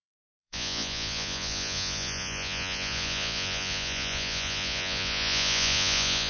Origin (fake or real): fake